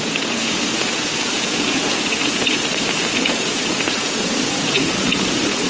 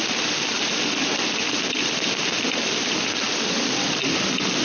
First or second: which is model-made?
first